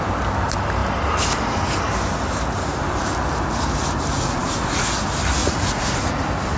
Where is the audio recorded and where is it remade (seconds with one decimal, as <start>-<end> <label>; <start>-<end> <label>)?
0.0-4.1 recorded; 4.1-5.0 remade; 5.0-5.4 recorded; 5.4-6.1 remade; 6.1-6.6 recorded